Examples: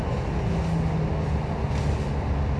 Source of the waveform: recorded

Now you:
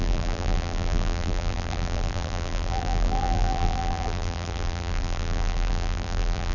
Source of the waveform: remade